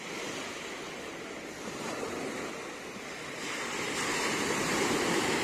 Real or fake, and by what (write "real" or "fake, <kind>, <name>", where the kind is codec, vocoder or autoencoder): real